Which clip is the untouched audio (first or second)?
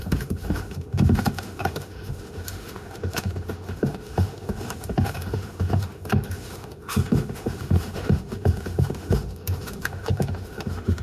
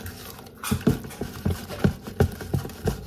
second